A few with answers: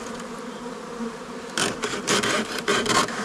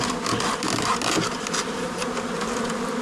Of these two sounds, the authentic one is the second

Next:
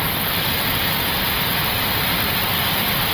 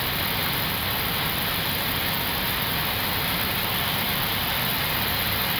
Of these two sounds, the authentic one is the second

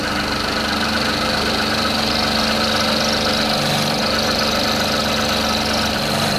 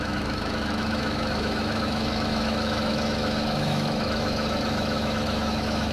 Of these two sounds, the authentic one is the first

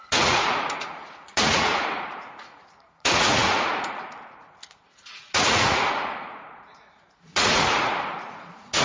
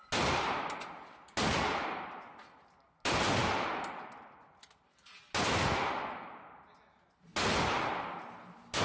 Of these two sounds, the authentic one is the second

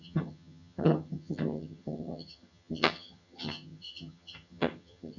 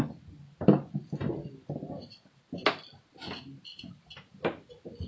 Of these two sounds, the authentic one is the second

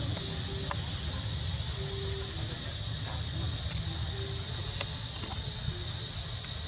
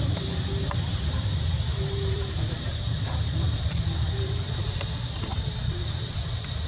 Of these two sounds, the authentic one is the first